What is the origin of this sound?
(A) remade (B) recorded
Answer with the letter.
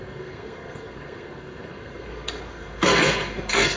A